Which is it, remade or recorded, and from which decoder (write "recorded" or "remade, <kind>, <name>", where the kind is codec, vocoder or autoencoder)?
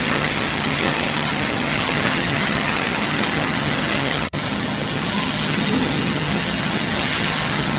remade, vocoder, HiFi-GAN